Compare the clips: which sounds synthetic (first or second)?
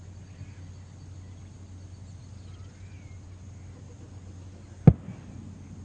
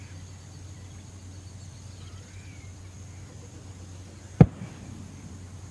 second